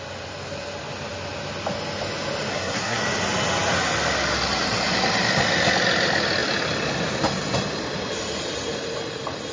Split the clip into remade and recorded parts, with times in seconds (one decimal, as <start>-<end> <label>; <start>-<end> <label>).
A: 0.0-2.5 recorded; 2.5-3.0 remade; 3.0-9.5 recorded